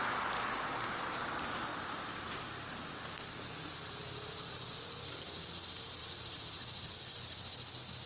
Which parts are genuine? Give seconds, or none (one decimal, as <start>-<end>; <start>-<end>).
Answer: 0.0-1.7; 2.8-6.0; 6.9-8.1